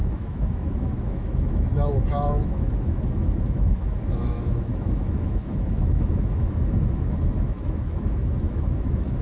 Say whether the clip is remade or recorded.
remade